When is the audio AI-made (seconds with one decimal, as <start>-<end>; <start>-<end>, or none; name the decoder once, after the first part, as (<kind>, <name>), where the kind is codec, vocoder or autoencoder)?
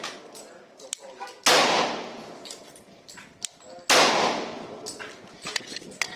none